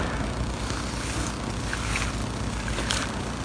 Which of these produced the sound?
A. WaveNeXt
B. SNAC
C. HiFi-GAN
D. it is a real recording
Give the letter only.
D